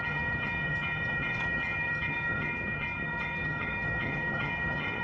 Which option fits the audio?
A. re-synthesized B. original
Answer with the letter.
A